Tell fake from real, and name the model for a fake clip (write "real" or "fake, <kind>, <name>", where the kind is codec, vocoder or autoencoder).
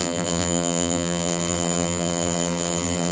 fake, vocoder, BigVGAN v2